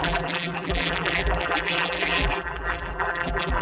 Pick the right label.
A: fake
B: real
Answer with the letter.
A